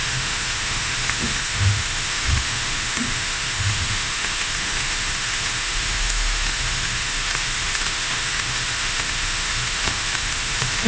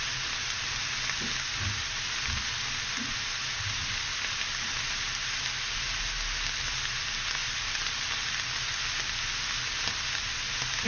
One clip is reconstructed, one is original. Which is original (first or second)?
second